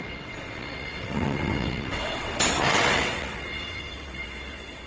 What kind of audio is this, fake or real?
fake